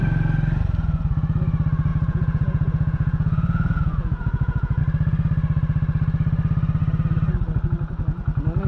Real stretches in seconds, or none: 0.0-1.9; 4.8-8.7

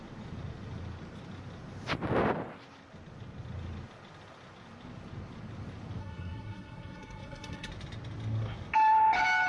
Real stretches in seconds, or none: 0.0-6.0; 7.7-9.5

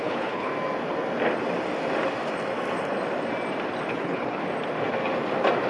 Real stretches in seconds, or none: 0.5-3.9; 4.4-5.7

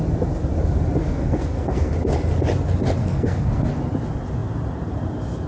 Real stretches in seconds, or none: 0.0-1.0; 1.9-3.0; 3.8-5.5

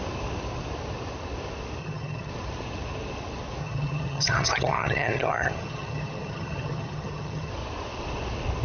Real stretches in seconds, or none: 0.0-1.8; 2.3-3.6; 7.5-8.6

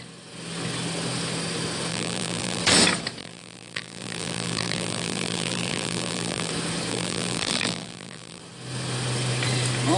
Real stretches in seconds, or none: 0.0-1.9; 2.6-3.2; 6.5-6.9; 8.4-10.0

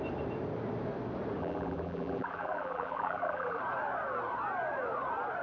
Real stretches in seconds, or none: 0.0-1.4; 3.6-5.4